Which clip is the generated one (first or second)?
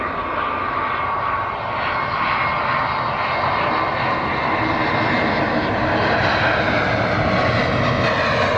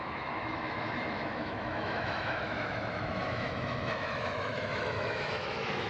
second